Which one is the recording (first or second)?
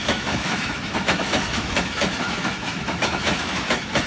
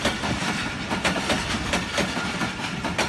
second